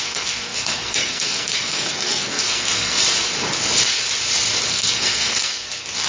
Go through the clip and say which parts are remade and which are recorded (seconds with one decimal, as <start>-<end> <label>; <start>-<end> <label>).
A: 0.0-3.0 remade; 3.0-4.7 recorded; 4.7-6.1 remade